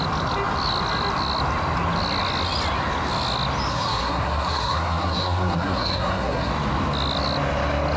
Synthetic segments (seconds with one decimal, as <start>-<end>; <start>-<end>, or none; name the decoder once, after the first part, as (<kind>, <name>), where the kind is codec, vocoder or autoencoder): 3.7-6.5 (codec, SNAC)